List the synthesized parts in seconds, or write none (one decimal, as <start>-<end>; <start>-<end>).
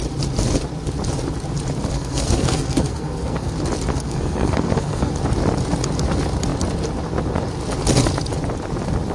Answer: 1.9-3.5; 3.9-5.1